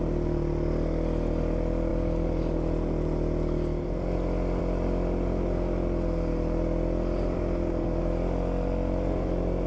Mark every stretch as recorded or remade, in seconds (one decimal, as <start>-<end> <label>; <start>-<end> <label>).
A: 0.0-9.7 recorded